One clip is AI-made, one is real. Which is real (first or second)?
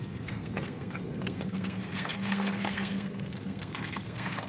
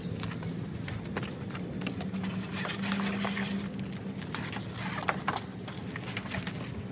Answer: second